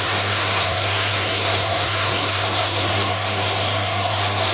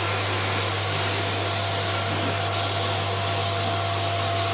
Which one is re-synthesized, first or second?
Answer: first